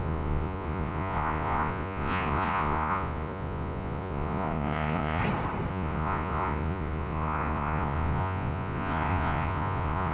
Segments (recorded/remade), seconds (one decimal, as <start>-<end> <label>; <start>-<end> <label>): 0.0-5.2 remade; 5.2-5.7 recorded; 5.7-10.1 remade